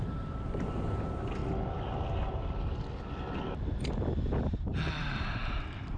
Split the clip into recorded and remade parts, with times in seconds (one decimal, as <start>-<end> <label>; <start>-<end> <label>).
0.0-1.4 remade; 1.4-5.0 recorded; 5.0-5.4 remade; 5.4-6.0 recorded